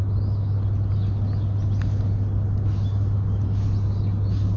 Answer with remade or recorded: recorded